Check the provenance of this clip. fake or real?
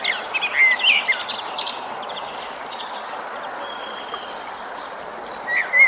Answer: real